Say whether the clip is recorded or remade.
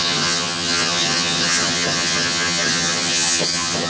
remade